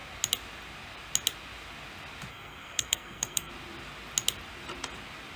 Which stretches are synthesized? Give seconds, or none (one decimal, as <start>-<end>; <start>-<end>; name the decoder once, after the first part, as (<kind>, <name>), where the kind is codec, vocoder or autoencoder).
2.3-3.5 (codec, SNAC)